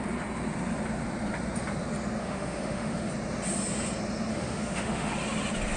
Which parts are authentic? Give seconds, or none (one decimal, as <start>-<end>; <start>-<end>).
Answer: 0.0-2.2; 3.1-4.3; 5.1-5.8